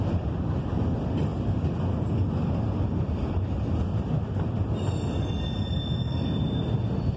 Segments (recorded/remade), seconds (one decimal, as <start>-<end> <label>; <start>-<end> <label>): 0.0-7.2 recorded